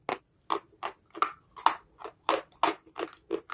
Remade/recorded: recorded